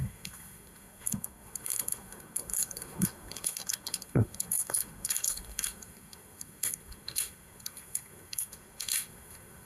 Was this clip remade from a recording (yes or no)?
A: yes